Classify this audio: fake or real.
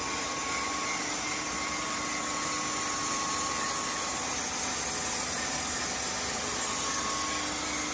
real